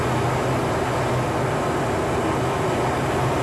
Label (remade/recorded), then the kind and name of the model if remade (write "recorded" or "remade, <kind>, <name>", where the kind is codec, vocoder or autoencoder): recorded